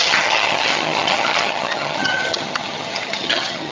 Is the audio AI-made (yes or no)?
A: yes